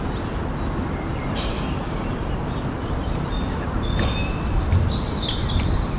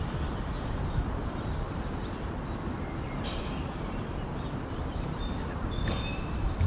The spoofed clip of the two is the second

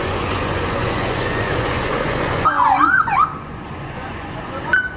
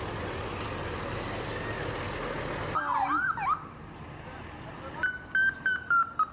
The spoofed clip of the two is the first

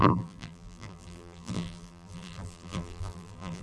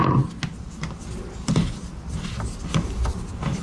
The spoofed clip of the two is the first